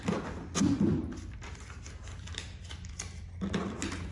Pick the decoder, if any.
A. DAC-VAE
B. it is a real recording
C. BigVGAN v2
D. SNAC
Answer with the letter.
B